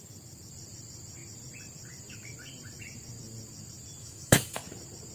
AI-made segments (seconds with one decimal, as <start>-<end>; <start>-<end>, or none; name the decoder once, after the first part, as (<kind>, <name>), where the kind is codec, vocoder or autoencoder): 4.0-4.6 (autoencoder, DAC-VAE)